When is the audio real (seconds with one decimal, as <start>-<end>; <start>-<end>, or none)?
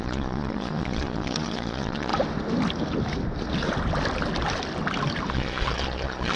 2.1-5.3